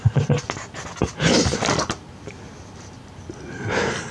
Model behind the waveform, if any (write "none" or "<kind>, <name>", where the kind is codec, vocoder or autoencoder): none